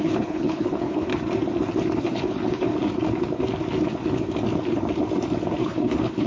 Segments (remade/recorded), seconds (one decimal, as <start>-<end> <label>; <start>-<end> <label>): 0.0-1.1 remade; 1.1-2.0 recorded; 2.0-2.7 remade; 2.7-5.6 recorded; 5.6-6.3 remade